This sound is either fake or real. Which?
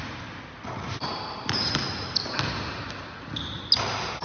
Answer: real